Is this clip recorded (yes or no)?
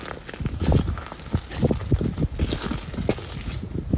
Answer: yes